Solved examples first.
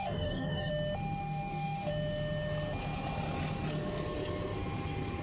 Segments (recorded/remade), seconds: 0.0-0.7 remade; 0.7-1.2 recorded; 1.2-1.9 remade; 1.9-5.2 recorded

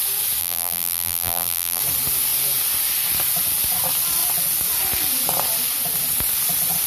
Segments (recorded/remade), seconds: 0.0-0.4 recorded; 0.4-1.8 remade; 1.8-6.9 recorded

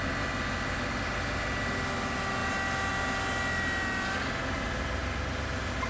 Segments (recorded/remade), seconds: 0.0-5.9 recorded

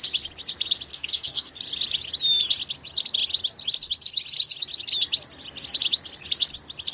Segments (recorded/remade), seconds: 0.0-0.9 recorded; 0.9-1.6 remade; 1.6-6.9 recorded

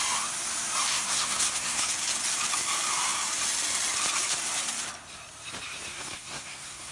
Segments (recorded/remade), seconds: 0.0-0.9 recorded; 0.9-1.9 remade; 1.9-5.9 recorded; 5.9-6.9 remade